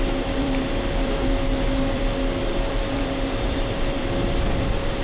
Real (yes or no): no